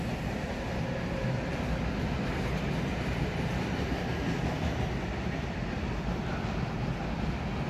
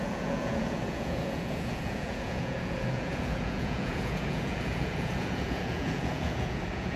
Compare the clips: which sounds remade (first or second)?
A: second